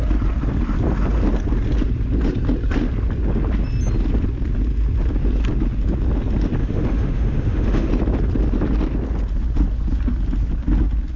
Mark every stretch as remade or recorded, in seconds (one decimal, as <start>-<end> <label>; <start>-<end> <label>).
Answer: 0.0-6.6 recorded; 6.6-7.9 remade; 7.9-11.2 recorded